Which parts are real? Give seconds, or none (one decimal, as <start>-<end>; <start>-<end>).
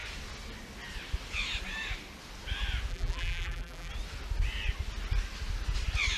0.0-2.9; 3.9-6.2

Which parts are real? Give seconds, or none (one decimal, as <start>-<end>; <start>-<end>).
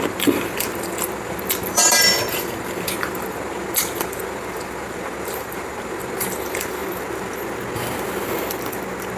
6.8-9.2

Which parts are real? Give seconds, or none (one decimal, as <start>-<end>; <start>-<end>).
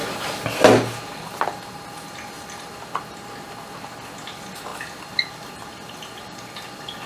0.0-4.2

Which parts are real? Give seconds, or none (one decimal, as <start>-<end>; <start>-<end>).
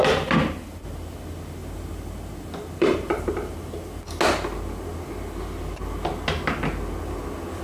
0.0-1.6; 3.3-7.6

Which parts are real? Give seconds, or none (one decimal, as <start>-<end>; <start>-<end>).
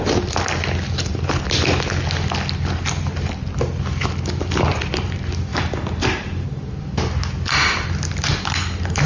0.0-5.5; 6.7-9.1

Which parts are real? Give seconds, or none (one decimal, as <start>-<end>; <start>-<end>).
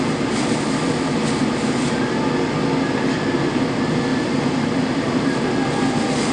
0.0-4.1; 5.5-6.3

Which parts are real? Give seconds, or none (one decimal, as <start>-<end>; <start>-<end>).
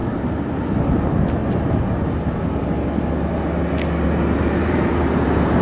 0.7-1.4; 2.1-4.6